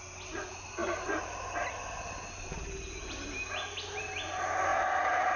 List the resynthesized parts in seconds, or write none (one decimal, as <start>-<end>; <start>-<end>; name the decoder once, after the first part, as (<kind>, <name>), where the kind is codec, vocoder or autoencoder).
none